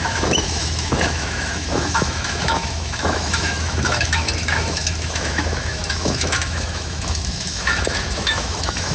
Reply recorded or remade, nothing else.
remade